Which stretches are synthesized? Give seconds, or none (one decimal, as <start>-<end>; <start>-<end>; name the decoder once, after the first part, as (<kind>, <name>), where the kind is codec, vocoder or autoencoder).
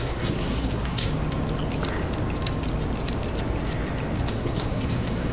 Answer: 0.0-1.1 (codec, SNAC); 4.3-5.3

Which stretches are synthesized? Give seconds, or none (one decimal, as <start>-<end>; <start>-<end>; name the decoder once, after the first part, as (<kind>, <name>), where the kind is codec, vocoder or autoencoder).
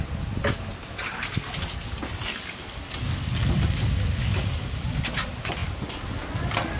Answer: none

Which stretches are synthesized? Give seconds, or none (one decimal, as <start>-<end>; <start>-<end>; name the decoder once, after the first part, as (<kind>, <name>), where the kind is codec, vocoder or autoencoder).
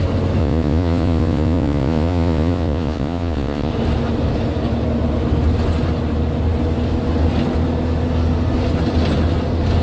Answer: 0.4-3.7 (vocoder, Vocos)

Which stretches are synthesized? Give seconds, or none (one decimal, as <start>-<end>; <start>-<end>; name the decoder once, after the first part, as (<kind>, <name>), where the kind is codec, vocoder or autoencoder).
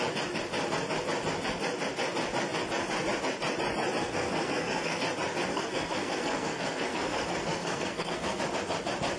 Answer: 4.0-5.0 (codec, SNAC); 5.5-8.4